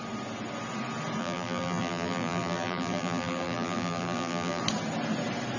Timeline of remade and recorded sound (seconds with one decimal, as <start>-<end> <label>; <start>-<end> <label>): 0.0-1.2 recorded; 1.2-4.6 remade; 4.6-5.6 recorded